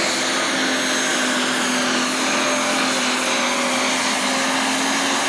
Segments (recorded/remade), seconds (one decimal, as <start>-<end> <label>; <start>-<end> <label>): 0.0-5.3 recorded